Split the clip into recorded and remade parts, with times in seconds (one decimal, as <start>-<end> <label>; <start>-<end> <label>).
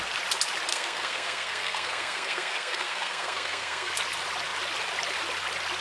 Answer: 0.0-0.7 recorded; 0.7-3.9 remade; 3.9-5.8 recorded